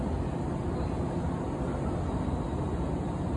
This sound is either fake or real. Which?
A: real